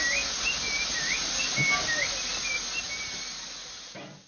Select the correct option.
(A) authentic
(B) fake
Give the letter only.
A